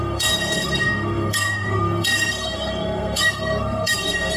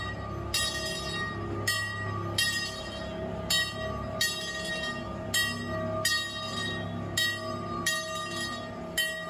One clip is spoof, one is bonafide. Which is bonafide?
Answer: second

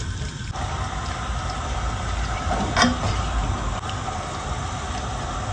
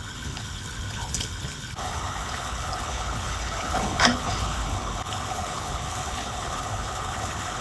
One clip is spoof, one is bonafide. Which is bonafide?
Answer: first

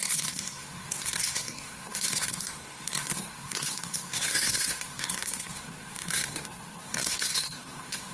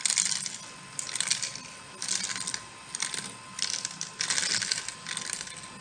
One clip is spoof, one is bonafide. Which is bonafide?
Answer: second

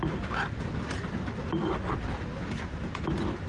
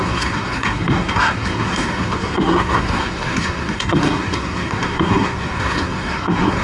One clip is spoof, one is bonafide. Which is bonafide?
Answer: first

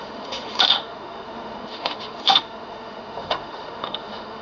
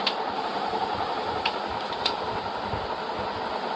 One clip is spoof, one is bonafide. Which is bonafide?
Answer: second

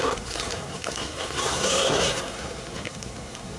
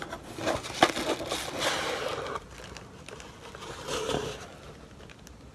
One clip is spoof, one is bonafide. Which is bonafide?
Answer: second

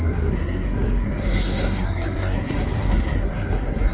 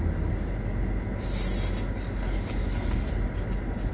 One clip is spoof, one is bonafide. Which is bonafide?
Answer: second